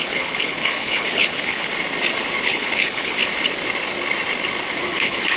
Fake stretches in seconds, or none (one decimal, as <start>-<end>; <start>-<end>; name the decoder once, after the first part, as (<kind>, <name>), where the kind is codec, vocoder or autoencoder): 0.0-1.7 (codec, HILCodec); 2.4-3.2; 4.8-5.4